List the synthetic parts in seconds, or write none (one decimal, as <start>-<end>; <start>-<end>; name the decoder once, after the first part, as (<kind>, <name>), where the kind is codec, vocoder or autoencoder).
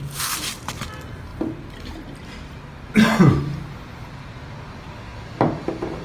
none